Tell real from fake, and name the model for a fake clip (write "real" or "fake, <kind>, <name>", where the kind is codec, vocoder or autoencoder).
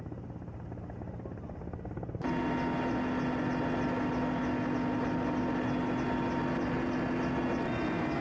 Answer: real